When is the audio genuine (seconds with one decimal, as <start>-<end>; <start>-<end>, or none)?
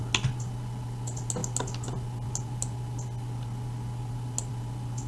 0.0-5.1